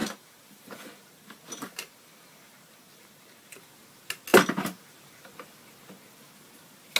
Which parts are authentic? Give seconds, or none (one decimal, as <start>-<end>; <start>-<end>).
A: 3.6-4.3; 5.1-7.0